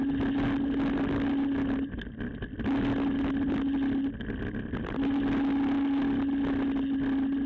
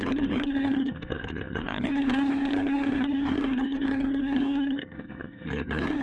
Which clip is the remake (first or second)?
second